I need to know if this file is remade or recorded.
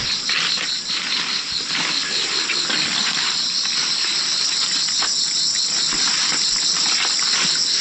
recorded